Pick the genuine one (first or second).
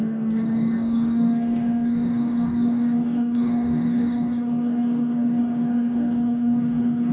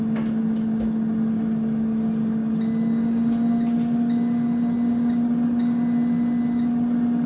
second